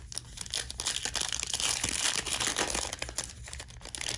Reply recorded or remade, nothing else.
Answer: recorded